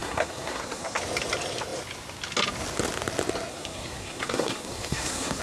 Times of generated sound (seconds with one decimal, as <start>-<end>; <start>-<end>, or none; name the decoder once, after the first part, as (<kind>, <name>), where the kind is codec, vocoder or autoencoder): 0.0-1.0 (codec, SNAC); 3.5-5.4